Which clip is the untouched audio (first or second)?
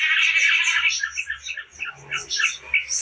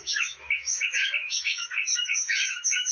first